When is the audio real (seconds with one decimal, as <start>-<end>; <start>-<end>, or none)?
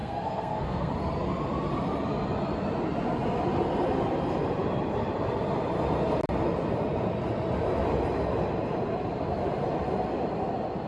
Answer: 0.9-10.9